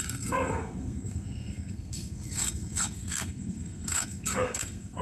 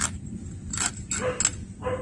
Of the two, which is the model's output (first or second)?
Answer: first